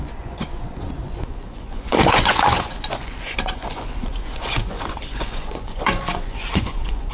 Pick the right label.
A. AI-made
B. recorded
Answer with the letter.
A